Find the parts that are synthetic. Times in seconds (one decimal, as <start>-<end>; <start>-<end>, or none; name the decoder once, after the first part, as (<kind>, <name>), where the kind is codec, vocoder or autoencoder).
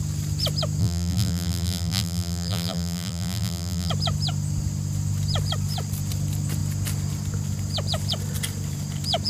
0.8-3.9 (vocoder, BigVGAN v2)